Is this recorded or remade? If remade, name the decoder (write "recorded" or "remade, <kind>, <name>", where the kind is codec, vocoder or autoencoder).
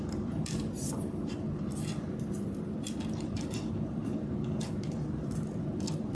remade, vocoder, BigVGAN v2